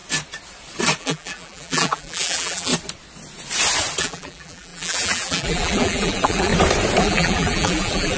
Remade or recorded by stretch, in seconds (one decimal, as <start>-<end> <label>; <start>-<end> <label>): 0.0-1.0 recorded; 1.0-2.7 remade; 2.7-4.0 recorded; 4.0-6.5 remade; 6.5-7.0 recorded; 7.0-8.2 remade

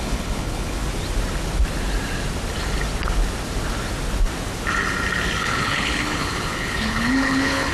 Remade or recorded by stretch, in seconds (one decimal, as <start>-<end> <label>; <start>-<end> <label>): 0.0-0.8 remade; 0.8-5.4 recorded; 5.4-7.7 remade

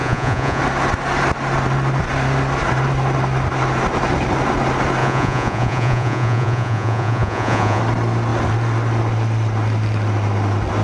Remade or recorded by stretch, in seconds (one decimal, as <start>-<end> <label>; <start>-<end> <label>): 0.0-0.6 remade; 0.6-5.0 recorded; 5.0-7.8 remade; 7.8-10.8 recorded

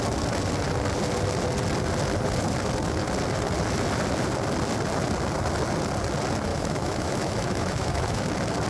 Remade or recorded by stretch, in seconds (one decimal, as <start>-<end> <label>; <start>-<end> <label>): 0.0-6.5 recorded; 6.5-8.2 remade; 8.2-8.7 recorded

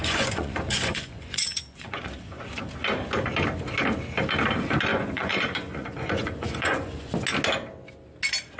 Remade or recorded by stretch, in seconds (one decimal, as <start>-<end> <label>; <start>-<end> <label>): 0.0-2.5 remade; 2.5-4.9 recorded; 4.9-7.1 remade; 7.1-8.6 recorded

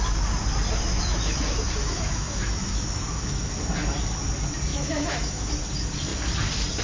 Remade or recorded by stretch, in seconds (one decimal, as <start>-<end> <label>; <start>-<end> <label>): 0.0-0.9 recorded; 0.9-1.4 remade; 1.4-1.8 recorded; 1.8-3.5 remade; 3.5-4.7 recorded; 4.7-5.5 remade; 5.5-6.8 recorded

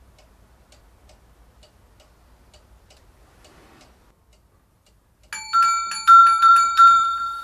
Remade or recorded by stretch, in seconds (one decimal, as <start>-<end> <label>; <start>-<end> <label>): 0.0-6.2 recorded; 6.2-7.4 remade